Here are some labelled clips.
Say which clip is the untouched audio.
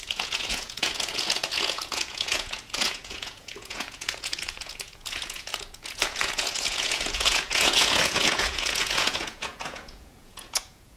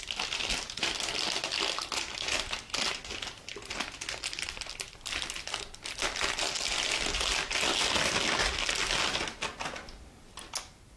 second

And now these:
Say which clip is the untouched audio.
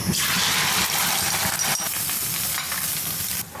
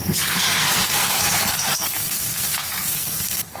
first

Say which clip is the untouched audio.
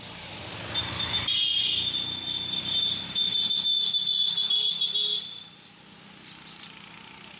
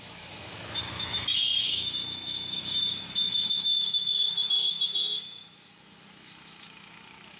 first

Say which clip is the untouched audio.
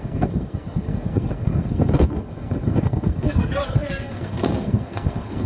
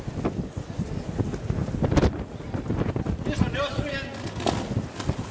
second